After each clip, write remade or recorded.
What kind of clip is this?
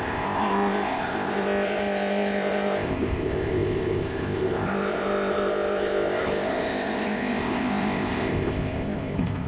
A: remade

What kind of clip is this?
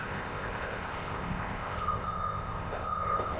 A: remade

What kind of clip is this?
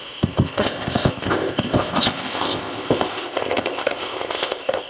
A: remade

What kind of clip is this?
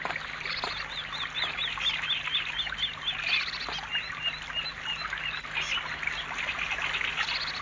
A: recorded